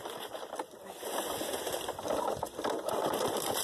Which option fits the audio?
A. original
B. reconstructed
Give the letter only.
B